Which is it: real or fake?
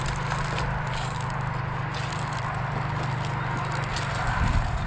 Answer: real